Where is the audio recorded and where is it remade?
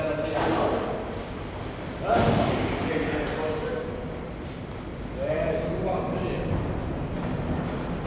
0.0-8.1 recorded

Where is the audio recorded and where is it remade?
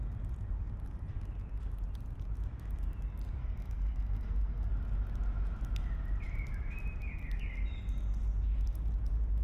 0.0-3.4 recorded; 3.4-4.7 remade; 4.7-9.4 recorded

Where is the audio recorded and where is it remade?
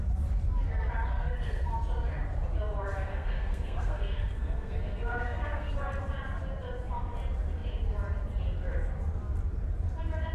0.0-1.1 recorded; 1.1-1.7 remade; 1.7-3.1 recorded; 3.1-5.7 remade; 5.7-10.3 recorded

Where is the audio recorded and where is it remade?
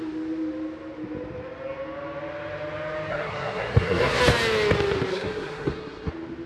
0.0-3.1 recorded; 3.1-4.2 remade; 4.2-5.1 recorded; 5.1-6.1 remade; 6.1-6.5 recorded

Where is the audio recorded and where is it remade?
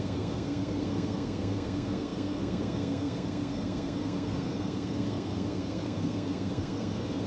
0.0-7.3 remade